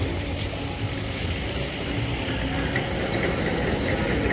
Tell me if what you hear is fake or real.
real